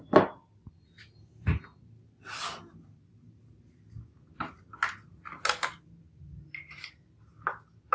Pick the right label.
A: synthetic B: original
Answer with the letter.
B